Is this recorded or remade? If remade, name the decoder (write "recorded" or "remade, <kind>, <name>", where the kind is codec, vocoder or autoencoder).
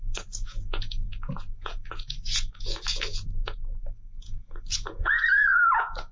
remade, vocoder, Vocos